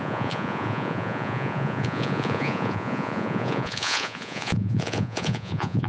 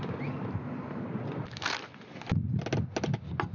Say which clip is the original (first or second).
second